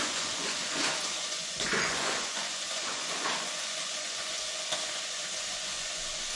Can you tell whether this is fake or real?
fake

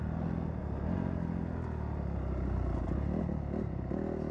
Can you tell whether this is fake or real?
real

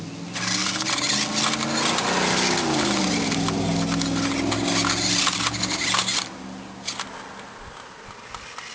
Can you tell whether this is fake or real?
real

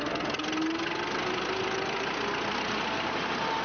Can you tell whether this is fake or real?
real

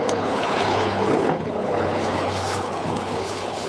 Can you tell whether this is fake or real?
fake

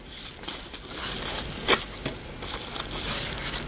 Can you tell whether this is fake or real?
real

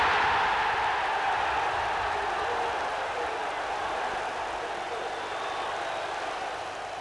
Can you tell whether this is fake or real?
real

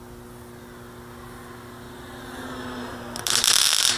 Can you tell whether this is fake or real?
real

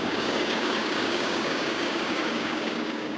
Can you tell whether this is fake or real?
fake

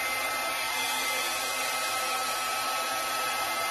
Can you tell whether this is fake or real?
real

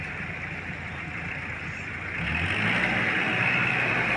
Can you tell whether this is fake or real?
real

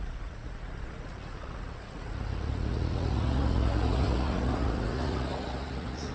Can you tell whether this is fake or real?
fake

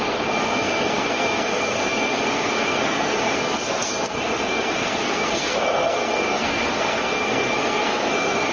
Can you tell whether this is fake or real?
fake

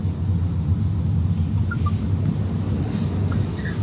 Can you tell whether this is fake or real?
real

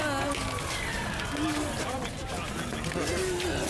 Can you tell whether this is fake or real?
real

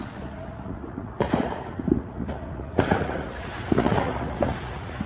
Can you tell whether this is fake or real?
fake